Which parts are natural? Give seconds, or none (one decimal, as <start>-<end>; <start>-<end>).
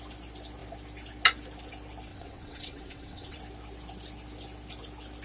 0.0-2.1; 3.4-5.2